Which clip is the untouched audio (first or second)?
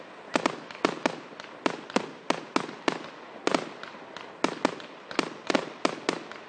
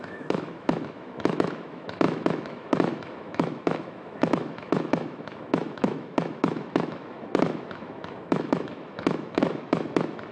first